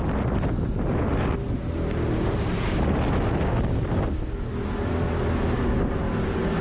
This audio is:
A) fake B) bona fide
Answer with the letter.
B